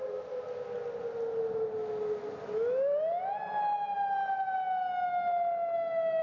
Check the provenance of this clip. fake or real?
real